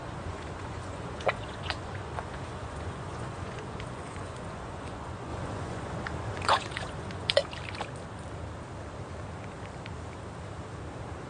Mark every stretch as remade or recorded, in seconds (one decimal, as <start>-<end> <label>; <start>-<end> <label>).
0.0-7.4 remade; 7.4-11.3 recorded